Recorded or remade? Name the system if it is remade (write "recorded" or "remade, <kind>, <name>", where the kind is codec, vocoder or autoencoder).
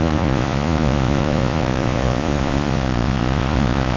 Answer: remade, vocoder, Vocos